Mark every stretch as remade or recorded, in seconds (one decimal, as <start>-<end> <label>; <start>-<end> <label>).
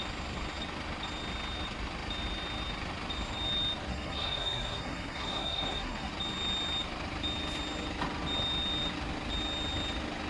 0.0-3.9 recorded; 3.9-6.1 remade; 6.1-10.3 recorded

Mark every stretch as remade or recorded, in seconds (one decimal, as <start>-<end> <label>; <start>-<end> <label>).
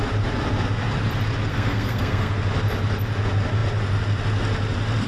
0.0-1.5 recorded; 1.5-2.3 remade; 2.3-5.1 recorded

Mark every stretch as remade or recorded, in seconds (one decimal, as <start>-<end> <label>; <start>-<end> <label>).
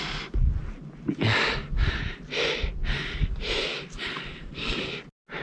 0.0-4.3 recorded; 4.3-4.8 remade; 4.8-5.4 recorded